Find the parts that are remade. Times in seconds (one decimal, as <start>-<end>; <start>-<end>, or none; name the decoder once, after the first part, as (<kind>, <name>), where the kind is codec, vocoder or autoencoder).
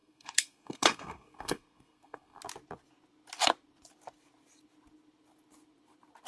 0.0-2.4 (codec, SNAC)